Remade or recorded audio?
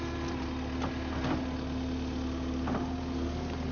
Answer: recorded